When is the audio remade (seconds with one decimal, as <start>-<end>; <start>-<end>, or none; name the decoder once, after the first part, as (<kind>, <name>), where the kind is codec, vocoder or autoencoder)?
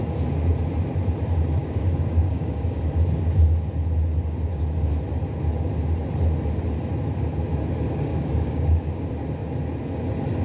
1.6-2.8 (codec, DAC); 8.1-9.1